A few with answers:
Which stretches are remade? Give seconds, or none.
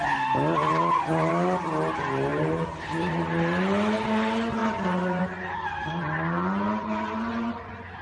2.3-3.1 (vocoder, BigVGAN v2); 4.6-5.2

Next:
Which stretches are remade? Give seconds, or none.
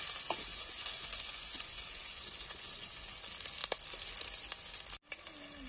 0.5-3.2 (vocoder, Vocos)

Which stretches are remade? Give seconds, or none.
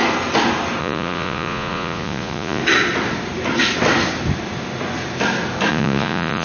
0.8-2.6 (vocoder, Vocos); 5.7-6.4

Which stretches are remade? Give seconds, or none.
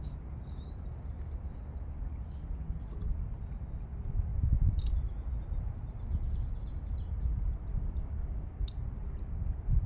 7.7-8.5 (codec, DAC)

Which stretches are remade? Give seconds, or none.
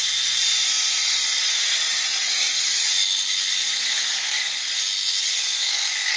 0.0-2.9 (vocoder, Vocos); 3.6-4.8